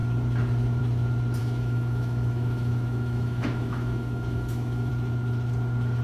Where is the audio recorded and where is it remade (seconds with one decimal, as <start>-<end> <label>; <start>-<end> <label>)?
0.0-1.4 recorded; 1.4-4.9 remade; 4.9-6.0 recorded